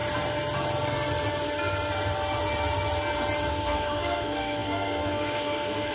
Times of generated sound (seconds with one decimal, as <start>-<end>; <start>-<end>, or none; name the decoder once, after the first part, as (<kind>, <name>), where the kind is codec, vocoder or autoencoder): 3.5-5.9 (codec, SNAC)